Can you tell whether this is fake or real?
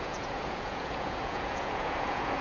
fake